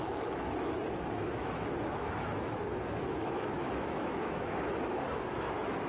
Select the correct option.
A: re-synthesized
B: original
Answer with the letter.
A